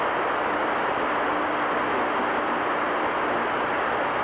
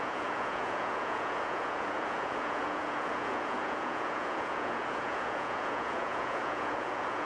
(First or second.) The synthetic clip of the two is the second